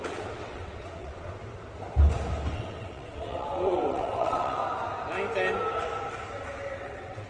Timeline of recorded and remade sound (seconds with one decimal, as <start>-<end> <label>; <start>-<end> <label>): 0.0-1.4 remade; 1.4-2.5 recorded; 2.5-4.6 remade; 4.6-6.7 recorded; 6.7-7.3 remade